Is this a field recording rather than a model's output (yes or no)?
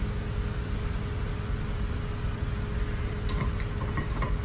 yes